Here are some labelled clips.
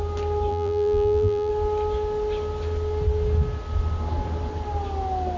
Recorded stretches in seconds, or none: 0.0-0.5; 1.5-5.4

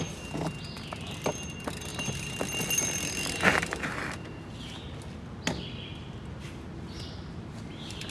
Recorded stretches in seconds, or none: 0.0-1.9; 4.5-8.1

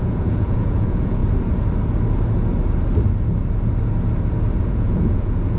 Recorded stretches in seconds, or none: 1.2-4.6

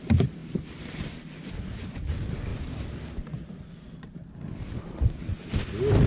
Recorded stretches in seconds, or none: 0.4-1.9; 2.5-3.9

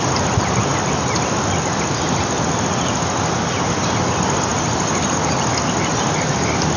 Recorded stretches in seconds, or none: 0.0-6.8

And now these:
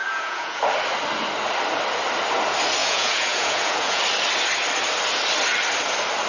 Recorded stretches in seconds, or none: 0.6-2.8; 4.0-6.3

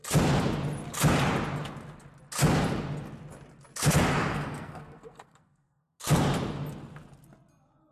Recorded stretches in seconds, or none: 0.0-4.3; 6.0-7.9